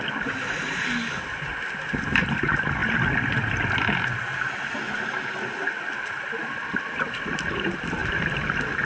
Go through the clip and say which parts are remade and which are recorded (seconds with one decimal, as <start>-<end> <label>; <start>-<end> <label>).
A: 0.0-8.9 recorded

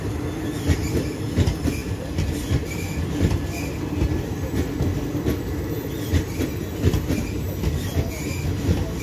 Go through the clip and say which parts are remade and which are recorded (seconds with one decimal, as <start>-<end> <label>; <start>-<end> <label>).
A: 0.0-9.0 recorded

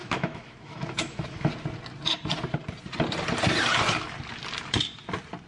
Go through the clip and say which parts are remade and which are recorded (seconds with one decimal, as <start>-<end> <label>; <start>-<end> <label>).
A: 0.0-1.5 remade; 1.5-5.5 recorded

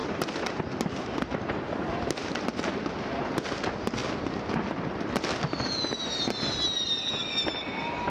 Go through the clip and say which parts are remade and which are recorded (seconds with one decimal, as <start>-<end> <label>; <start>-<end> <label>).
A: 0.0-8.1 recorded

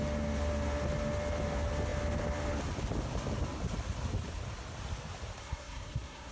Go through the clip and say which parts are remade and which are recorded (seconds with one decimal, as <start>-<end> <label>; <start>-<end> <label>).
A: 0.0-5.4 recorded; 5.4-6.3 remade

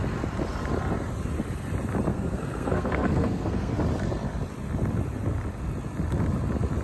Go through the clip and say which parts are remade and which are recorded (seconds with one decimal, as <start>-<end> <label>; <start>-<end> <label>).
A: 0.0-2.1 recorded; 2.1-3.7 remade; 3.7-6.8 recorded

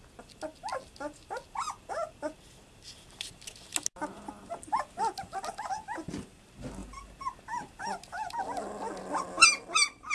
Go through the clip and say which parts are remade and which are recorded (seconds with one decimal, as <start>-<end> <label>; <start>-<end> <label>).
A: 0.0-10.1 recorded